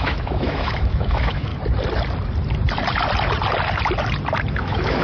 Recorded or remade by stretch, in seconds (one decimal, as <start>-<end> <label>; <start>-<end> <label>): 0.0-1.5 remade; 1.5-4.5 recorded; 4.5-5.0 remade